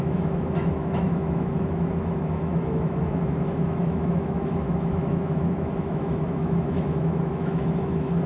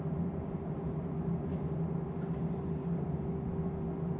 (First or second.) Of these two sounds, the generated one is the first